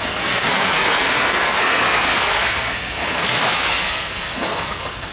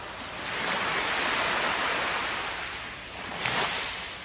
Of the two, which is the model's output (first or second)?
first